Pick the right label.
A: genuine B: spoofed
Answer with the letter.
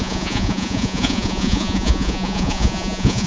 B